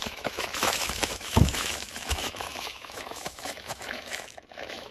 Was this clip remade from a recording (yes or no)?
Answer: yes